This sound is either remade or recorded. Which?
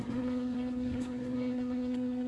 remade